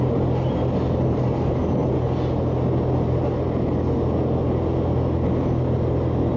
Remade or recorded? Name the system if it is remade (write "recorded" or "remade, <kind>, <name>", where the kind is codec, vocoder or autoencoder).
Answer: recorded